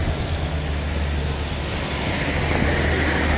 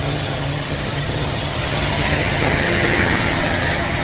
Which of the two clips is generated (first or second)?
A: second